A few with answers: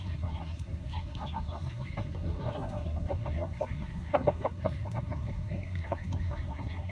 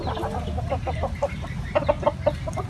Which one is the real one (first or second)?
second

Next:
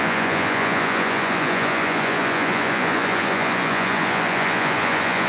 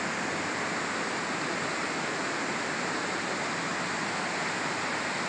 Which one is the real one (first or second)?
second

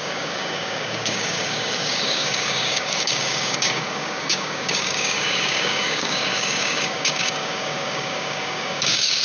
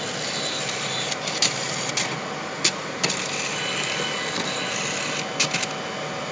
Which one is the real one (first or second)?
second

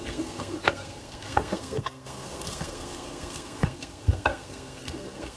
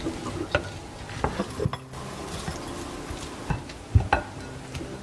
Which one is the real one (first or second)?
second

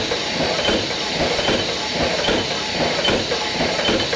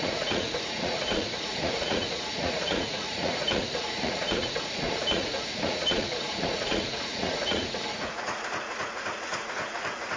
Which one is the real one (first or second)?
first